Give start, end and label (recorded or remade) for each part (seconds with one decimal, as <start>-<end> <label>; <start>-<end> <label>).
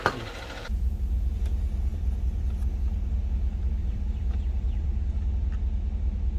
0.0-3.8 recorded; 3.8-5.3 remade; 5.3-6.4 recorded